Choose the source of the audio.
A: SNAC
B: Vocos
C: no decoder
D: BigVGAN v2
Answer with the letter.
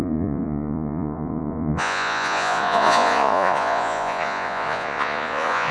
B